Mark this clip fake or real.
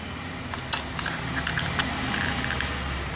real